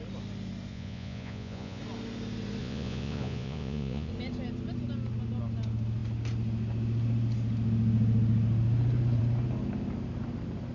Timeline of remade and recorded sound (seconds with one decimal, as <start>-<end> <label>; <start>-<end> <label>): 0.0-0.7 recorded; 0.7-1.8 remade; 1.8-2.6 recorded; 2.6-4.1 remade; 4.1-10.7 recorded

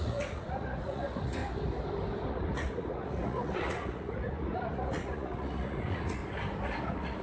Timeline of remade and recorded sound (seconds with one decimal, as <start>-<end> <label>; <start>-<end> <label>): 0.0-1.4 remade; 1.4-2.3 recorded; 2.3-6.2 remade; 6.2-6.8 recorded; 6.8-7.2 remade